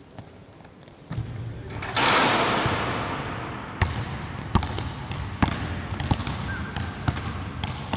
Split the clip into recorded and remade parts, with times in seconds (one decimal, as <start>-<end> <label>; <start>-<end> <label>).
0.0-8.0 recorded